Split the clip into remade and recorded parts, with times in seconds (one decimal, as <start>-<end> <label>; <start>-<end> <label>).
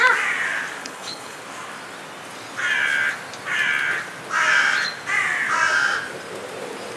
0.0-0.8 recorded; 0.8-1.4 remade; 1.4-7.0 recorded